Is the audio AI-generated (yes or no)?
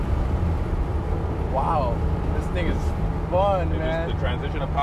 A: no